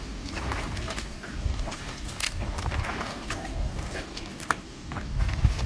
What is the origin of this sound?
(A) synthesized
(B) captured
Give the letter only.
A